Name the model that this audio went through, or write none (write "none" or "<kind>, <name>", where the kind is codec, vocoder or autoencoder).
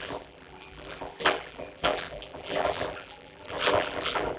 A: vocoder, BigVGAN v2